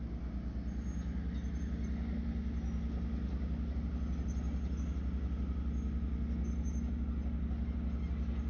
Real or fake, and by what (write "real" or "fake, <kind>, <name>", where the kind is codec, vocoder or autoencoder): real